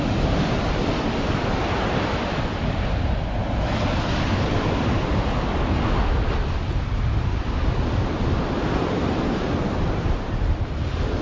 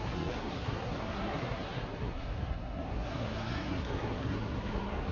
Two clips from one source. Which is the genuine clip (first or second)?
first